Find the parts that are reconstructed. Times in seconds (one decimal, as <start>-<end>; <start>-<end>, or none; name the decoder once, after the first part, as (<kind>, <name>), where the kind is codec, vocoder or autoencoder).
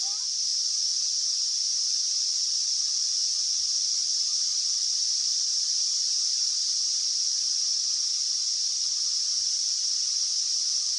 4.5-7.1 (vocoder, BigVGAN v2)